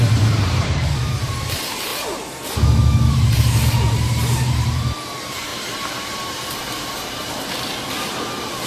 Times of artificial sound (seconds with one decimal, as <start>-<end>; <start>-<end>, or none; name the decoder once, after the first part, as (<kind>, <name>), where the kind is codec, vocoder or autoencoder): 0.0-1.9 (vocoder, BigVGAN v2); 3.1-8.7